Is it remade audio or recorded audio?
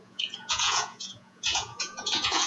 remade